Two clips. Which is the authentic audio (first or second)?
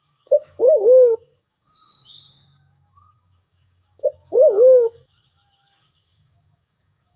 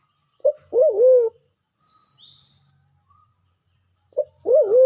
second